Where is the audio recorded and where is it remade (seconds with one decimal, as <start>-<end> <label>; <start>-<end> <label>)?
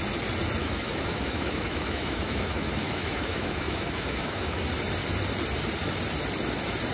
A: 0.0-0.6 recorded; 0.6-4.7 remade; 4.7-6.9 recorded